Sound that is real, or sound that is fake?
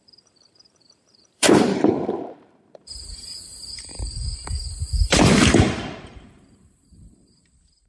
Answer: fake